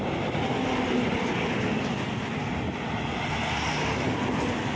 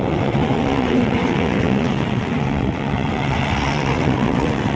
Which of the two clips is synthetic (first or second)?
second